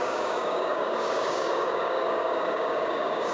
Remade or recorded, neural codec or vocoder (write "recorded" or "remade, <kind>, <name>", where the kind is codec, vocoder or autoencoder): remade, codec, DAC